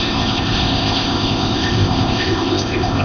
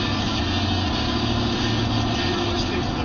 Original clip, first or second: second